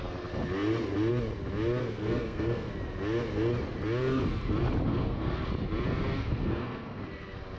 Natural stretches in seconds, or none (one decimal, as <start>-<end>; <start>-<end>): 0.0-1.8; 2.7-4.9; 5.5-6.2; 7.0-7.6